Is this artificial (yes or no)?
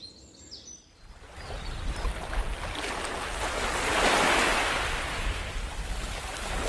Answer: no